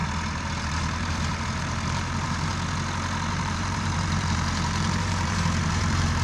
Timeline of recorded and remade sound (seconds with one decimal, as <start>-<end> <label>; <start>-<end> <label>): 0.0-0.6 recorded; 0.6-2.5 remade; 2.5-3.3 recorded; 3.3-6.2 remade